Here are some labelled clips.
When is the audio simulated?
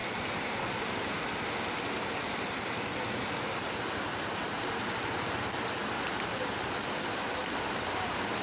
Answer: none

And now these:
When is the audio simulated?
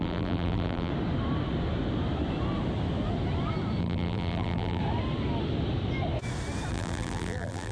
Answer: 0.0-0.9; 3.8-4.8; 6.7-7.7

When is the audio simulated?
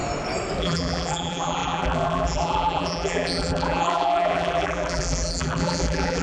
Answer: 0.6-6.2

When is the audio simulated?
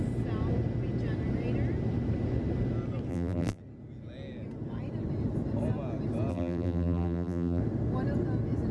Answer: 3.1-3.6; 6.3-7.6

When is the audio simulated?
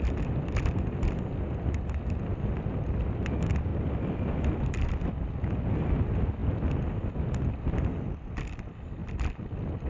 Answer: 3.7-5.1